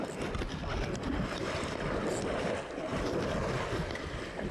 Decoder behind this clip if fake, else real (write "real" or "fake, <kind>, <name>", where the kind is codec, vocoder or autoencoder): real